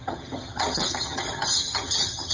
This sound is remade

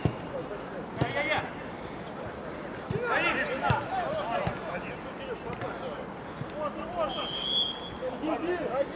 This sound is recorded